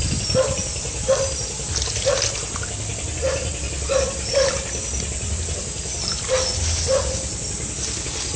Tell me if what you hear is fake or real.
real